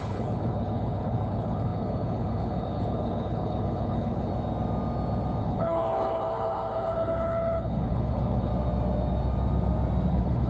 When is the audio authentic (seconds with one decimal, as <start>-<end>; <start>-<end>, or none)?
4.3-5.4; 8.5-10.1